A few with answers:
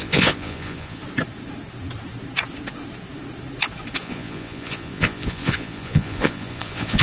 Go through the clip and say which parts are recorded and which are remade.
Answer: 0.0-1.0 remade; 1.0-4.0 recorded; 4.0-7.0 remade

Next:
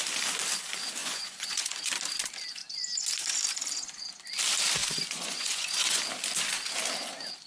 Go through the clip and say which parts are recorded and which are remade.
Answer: 0.0-1.0 recorded; 1.0-1.9 remade; 1.9-4.8 recorded; 4.8-6.0 remade; 6.0-7.5 recorded

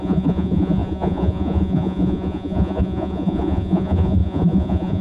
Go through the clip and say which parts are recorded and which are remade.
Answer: 0.0-5.0 remade

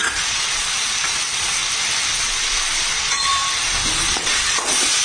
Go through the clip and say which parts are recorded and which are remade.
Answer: 0.0-1.6 remade; 1.6-3.0 recorded; 3.0-3.4 remade; 3.4-4.1 recorded; 4.1-5.0 remade

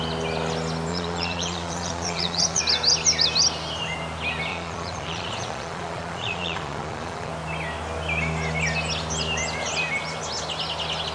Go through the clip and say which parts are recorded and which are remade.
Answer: 0.0-0.9 recorded; 0.9-2.6 remade; 2.6-4.5 recorded; 4.5-7.3 remade; 7.3-11.1 recorded